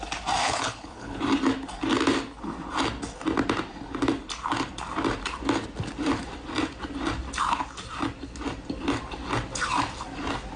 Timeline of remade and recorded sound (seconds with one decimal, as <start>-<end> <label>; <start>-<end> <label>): 0.0-0.4 recorded; 0.4-1.2 remade; 1.2-10.6 recorded